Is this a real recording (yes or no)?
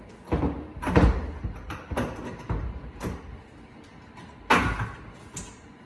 yes